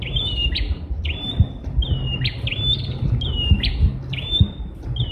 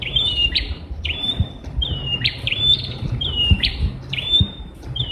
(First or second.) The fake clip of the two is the second